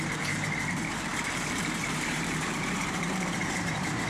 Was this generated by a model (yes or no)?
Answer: yes